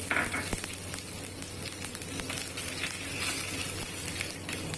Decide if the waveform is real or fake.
real